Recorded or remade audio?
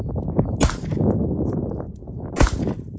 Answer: recorded